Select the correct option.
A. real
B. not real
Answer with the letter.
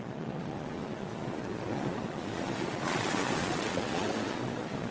B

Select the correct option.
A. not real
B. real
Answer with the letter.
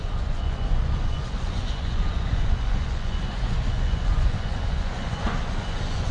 A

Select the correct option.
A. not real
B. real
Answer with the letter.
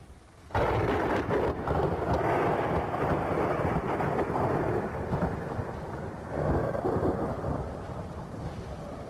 B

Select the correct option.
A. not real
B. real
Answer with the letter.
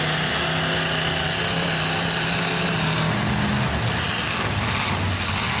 B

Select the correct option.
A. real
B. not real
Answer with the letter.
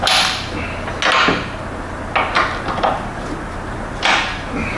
A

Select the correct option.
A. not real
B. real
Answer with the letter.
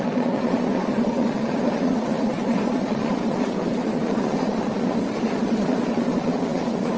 A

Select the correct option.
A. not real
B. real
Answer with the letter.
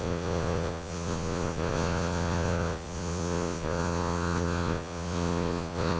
A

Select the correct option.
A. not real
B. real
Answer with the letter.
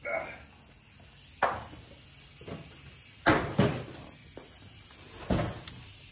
B